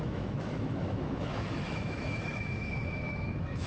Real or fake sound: fake